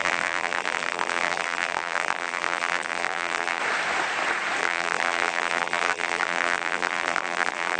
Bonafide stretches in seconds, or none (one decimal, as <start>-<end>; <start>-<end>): 3.6-4.6